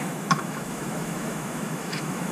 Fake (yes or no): yes